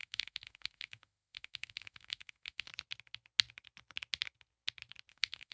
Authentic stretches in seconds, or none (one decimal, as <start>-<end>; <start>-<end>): 2.7-5.1